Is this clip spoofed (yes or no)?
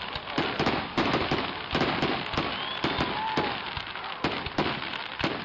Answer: no